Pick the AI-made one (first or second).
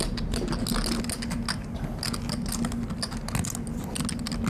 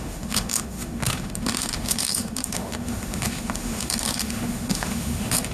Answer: second